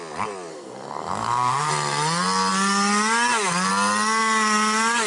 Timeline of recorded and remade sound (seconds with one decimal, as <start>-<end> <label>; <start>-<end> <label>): 0.0-0.5 recorded; 0.5-1.7 remade; 1.7-5.1 recorded